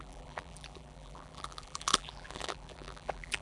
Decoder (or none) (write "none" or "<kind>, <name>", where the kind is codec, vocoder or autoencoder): vocoder, BigVGAN v2